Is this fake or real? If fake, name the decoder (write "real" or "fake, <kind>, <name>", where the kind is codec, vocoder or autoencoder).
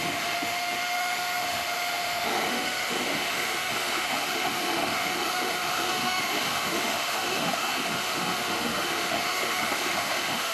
fake, autoencoder, DAC-VAE